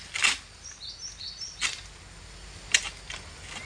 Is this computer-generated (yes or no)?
no